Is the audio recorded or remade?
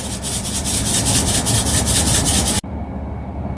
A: recorded